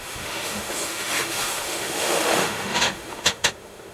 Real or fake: fake